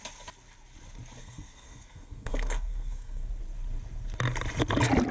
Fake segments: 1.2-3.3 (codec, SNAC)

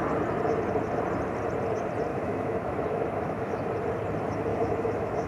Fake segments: 2.1-3.7 (autoencoder, DAC-VAE); 4.5-5.3

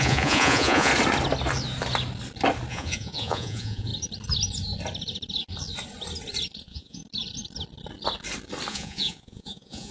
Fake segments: 0.0-0.9 (vocoder, Vocos); 2.7-3.9; 6.6-7.0; 8.7-9.9

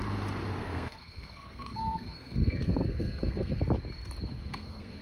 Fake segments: 0.6-3.6 (codec, SNAC); 4.4-5.0

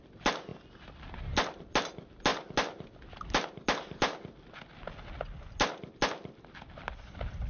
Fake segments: none